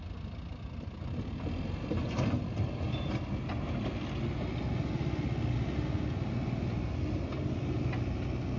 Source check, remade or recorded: recorded